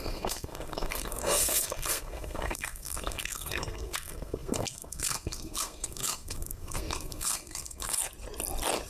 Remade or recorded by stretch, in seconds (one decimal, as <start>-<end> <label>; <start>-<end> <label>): 0.0-8.0 remade; 8.0-8.9 recorded